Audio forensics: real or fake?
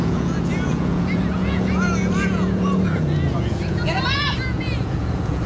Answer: fake